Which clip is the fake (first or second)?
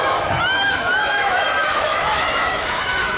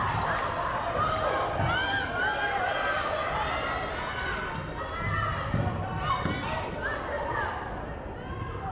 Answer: first